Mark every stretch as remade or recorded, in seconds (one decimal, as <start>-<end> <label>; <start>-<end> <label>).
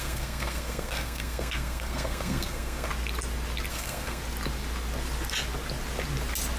0.0-2.9 remade; 2.9-3.7 recorded; 3.7-4.2 remade; 4.2-6.6 recorded